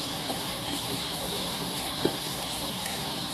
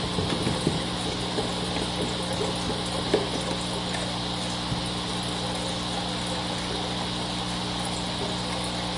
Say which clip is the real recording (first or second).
second